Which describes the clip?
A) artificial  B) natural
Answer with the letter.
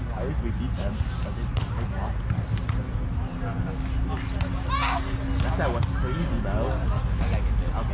B